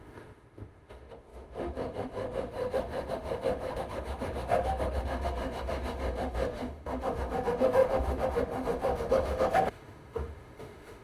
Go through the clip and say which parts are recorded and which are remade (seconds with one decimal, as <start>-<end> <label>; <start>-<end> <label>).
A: 0.0-11.0 remade

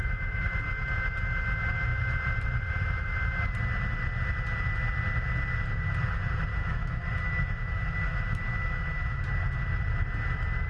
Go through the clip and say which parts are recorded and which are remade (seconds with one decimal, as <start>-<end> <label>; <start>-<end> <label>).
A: 0.0-0.6 remade; 0.6-6.5 recorded; 6.5-9.2 remade; 9.2-10.7 recorded

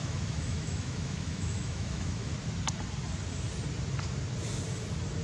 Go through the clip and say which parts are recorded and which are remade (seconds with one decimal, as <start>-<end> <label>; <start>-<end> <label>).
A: 0.0-2.3 remade; 2.3-5.2 recorded

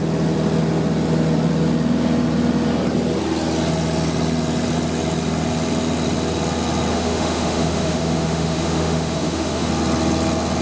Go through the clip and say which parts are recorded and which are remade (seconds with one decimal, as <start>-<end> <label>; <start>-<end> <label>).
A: 0.0-6.9 recorded; 6.9-9.7 remade; 9.7-10.6 recorded

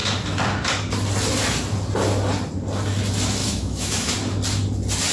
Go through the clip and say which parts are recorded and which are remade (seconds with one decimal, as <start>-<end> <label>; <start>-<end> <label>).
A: 0.0-3.4 recorded; 3.4-4.1 remade; 4.1-5.1 recorded

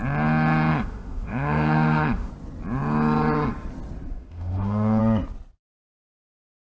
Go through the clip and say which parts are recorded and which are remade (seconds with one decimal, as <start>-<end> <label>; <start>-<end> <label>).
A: 0.0-0.7 recorded; 0.7-2.3 remade; 2.3-4.1 recorded; 4.1-5.0 remade; 5.0-6.6 recorded

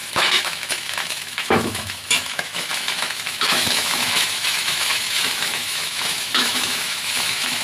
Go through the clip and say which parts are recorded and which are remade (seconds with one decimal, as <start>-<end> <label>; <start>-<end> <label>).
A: 0.0-7.6 remade

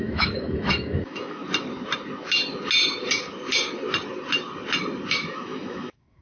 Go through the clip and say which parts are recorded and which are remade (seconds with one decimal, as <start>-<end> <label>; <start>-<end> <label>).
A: 0.0-1.4 remade; 1.4-5.1 recorded; 5.1-6.2 remade